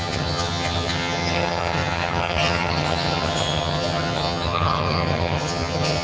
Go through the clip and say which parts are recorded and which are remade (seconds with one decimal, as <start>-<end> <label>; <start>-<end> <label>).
0.0-6.0 remade